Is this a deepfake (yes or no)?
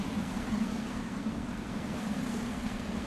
yes